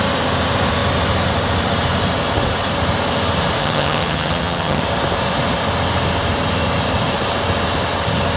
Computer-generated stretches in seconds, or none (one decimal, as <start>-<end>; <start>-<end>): 3.6-4.8